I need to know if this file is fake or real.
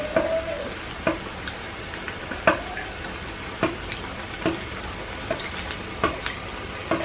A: real